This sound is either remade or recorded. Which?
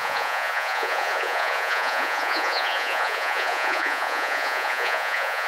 remade